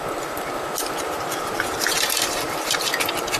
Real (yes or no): no